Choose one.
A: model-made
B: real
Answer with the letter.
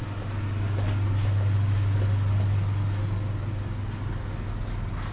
B